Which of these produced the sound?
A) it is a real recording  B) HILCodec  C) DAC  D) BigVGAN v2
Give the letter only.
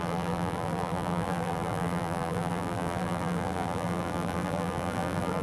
D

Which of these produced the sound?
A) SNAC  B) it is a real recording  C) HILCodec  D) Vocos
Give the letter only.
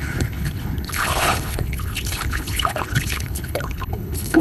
C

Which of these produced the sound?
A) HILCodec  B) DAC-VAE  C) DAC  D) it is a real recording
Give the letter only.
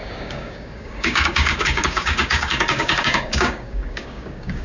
C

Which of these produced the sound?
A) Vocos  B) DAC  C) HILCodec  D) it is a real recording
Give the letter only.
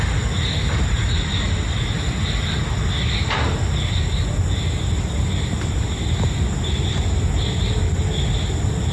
D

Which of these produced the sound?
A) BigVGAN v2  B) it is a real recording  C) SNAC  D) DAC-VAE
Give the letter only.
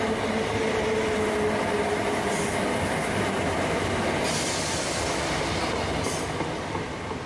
B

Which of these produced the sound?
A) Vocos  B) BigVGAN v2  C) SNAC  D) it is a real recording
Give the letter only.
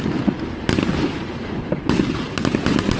D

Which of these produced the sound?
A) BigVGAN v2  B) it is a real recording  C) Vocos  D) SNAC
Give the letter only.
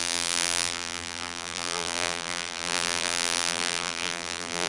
A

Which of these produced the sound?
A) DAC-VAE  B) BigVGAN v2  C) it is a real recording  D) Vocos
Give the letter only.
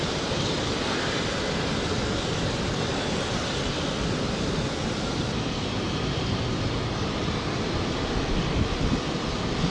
B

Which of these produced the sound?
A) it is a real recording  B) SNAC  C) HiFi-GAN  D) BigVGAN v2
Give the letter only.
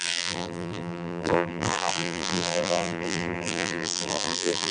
D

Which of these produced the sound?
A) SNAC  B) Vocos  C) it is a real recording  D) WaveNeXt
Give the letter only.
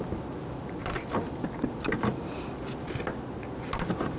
C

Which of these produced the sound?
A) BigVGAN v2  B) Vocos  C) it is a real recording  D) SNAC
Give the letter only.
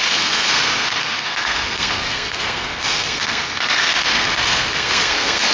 D